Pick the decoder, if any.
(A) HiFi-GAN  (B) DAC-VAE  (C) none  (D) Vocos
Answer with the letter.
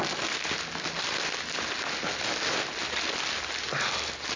C